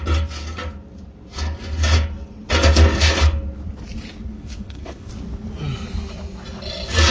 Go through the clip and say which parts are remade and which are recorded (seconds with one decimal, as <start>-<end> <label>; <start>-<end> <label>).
0.0-4.3 recorded; 4.3-5.1 remade; 5.1-7.1 recorded